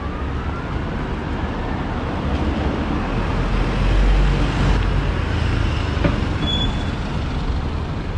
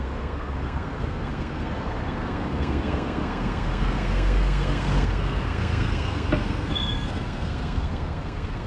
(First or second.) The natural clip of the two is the first